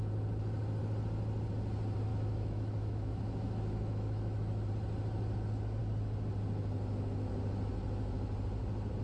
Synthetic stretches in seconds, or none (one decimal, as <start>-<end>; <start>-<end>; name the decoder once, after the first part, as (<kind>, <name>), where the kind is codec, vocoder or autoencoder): 2.1-4.7 (autoencoder, DAC-VAE)